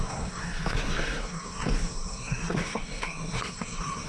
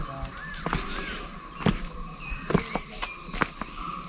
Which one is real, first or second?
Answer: second